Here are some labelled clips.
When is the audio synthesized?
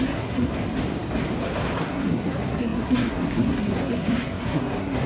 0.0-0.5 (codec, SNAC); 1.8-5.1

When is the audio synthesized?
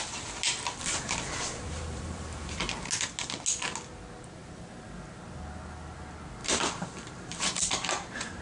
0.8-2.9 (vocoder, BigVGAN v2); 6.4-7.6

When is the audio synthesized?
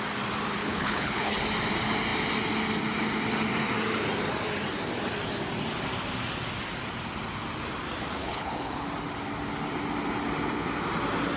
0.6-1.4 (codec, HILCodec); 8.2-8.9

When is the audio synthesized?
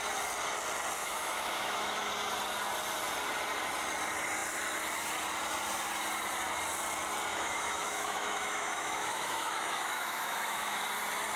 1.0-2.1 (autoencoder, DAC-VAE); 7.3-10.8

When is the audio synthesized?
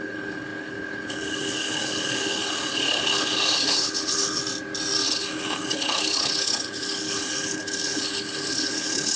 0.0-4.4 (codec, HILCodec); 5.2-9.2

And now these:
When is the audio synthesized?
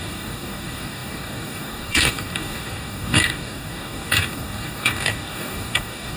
0.0-6.2 (codec, DAC)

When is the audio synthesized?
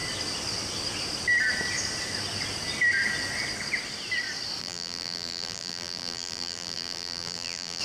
4.6-7.8 (vocoder, BigVGAN v2)